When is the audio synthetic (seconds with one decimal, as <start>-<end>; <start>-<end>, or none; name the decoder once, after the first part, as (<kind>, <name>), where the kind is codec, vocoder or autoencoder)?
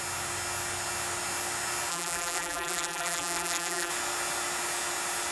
1.9-3.9 (vocoder, BigVGAN v2)